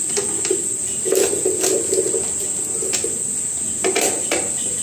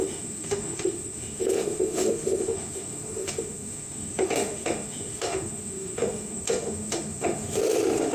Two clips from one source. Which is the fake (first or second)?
second